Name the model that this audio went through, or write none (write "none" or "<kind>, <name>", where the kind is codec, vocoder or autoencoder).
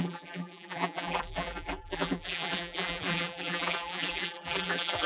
vocoder, BigVGAN v2